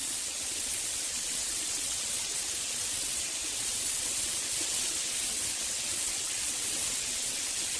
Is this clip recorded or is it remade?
remade